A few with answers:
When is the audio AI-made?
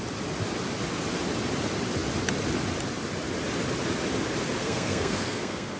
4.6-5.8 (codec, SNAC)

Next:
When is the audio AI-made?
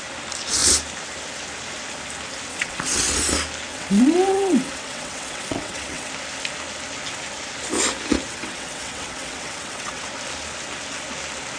2.5-3.1 (vocoder, WaveNeXt); 3.7-6.1; 8.3-10.0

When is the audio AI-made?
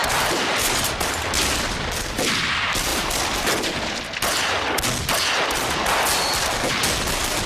0.0-2.2 (vocoder, BigVGAN v2)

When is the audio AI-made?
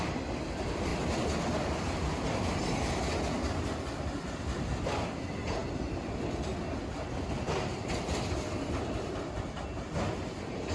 none